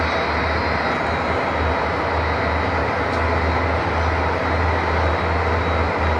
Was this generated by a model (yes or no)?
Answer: no